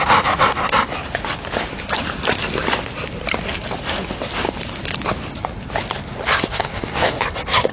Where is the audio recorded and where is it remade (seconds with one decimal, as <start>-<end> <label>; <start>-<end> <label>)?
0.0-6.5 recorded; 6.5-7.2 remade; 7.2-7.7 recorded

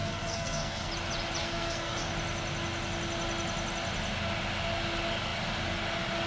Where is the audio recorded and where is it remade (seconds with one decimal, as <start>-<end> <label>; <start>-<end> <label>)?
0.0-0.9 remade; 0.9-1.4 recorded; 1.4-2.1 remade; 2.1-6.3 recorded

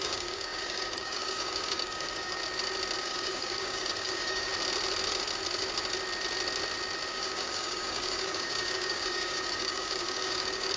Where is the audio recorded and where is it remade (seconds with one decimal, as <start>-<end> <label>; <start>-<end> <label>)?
0.0-2.4 remade; 2.4-3.0 recorded; 3.0-4.5 remade; 4.5-7.1 recorded; 7.1-10.8 remade